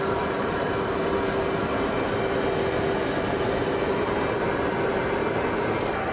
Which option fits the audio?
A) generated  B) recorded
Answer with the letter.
B